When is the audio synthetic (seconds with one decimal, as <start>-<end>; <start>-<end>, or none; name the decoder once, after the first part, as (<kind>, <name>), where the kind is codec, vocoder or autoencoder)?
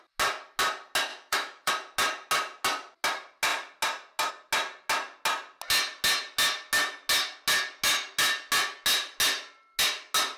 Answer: 1.1-1.7 (autoencoder, DAC-VAE)